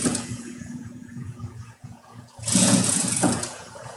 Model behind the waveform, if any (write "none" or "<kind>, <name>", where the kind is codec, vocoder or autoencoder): vocoder, Vocos